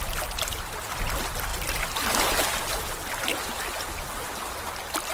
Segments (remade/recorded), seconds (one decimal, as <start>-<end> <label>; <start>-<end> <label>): 0.0-1.5 recorded; 1.5-2.9 remade; 2.9-5.1 recorded